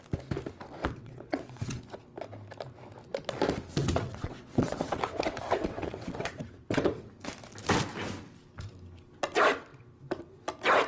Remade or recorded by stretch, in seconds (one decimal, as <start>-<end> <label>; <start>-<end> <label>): 0.0-0.8 recorded; 0.8-1.8 remade; 1.8-3.8 recorded; 3.8-7.1 remade; 7.1-10.9 recorded